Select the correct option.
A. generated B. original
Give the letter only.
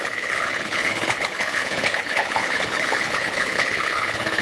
A